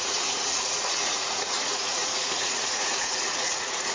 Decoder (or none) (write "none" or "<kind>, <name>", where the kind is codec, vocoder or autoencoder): vocoder, Vocos